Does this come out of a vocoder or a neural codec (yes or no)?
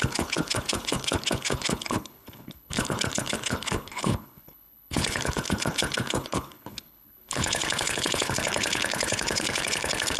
yes